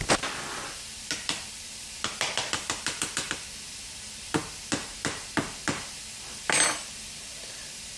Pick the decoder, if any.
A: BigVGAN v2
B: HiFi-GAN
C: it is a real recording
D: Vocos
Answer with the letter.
C